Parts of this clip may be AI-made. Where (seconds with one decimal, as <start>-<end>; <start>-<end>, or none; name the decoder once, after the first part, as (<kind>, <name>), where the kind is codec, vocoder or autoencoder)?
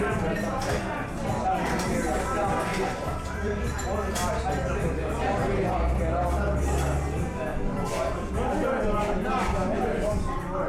2.7-4.4 (vocoder, BigVGAN v2); 7.5-8.3